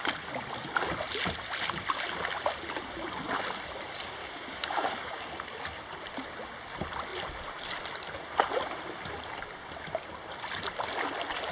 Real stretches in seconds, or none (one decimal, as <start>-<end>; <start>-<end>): 0.0-4.2; 5.3-11.5